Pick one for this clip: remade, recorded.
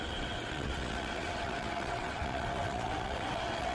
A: remade